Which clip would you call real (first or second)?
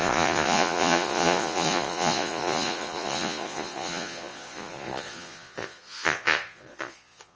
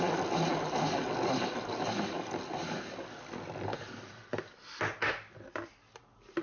second